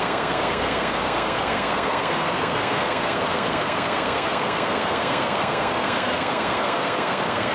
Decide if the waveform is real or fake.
fake